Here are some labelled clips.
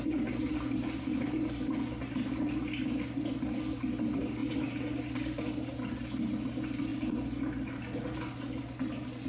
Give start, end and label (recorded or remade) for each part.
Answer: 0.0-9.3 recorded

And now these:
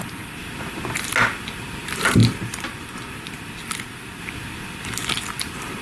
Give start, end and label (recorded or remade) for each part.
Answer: 0.0-5.8 recorded

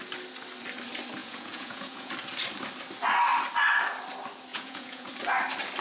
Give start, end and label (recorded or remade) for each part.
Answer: 0.0-1.2 recorded; 1.2-2.1 remade; 2.1-4.5 recorded; 4.5-5.1 remade; 5.1-5.8 recorded

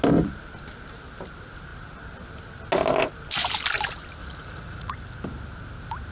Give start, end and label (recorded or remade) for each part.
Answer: 0.0-4.2 recorded; 4.2-4.9 remade; 4.9-6.1 recorded

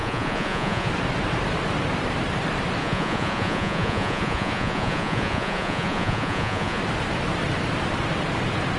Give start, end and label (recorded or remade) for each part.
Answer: 0.0-0.9 remade; 0.9-2.8 recorded; 2.8-6.8 remade; 6.8-8.8 recorded